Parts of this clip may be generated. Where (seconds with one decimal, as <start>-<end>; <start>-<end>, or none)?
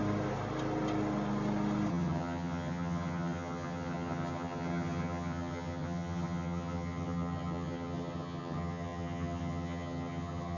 1.9-10.6